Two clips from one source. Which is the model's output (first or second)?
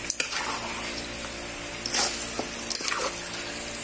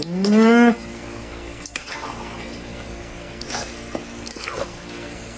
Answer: second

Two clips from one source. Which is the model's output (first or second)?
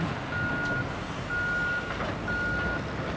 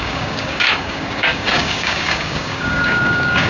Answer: second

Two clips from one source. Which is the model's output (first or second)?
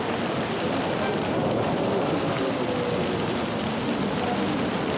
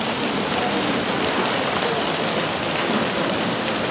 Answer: second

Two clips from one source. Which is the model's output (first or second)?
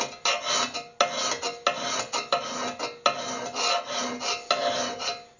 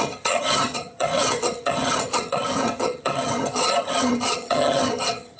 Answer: second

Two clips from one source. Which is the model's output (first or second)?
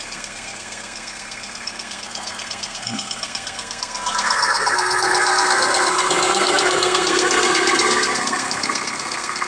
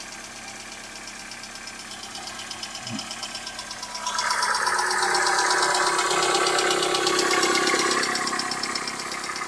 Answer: first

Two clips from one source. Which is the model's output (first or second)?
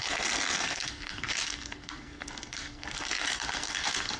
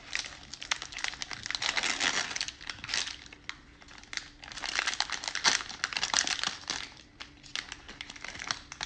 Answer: first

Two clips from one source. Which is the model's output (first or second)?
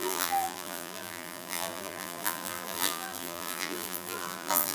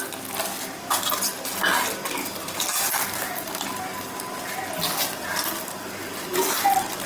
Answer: first